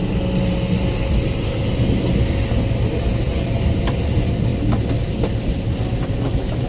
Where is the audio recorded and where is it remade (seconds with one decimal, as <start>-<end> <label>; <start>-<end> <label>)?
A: 0.0-6.7 recorded